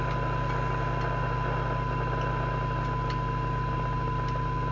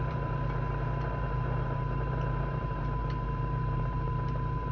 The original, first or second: first